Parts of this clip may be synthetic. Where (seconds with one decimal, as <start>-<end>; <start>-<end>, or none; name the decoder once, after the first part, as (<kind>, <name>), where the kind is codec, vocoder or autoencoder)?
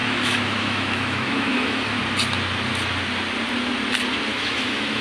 0.0-2.0 (autoencoder, DAC-VAE); 4.3-5.0